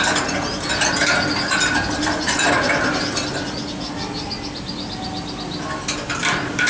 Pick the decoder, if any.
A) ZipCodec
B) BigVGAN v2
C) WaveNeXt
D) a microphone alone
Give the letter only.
D